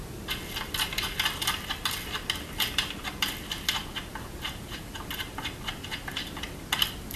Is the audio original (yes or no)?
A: yes